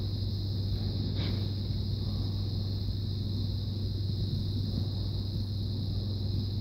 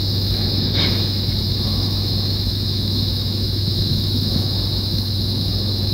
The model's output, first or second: second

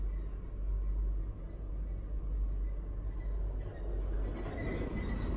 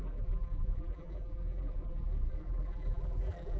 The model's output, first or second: second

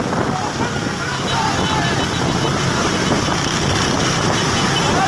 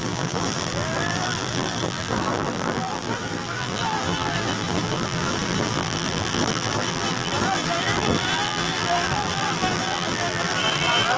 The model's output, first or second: second